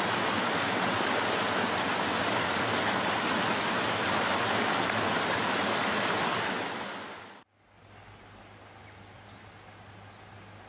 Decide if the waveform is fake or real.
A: real